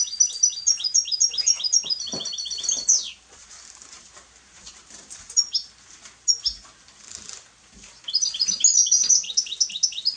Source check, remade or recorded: recorded